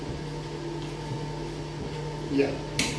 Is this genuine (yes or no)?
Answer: yes